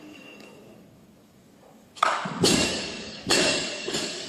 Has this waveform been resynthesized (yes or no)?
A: yes